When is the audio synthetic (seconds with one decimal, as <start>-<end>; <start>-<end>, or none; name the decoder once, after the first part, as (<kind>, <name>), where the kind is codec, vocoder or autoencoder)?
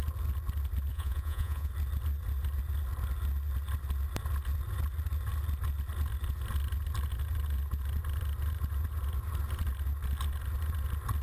0.9-1.7 (vocoder, Vocos)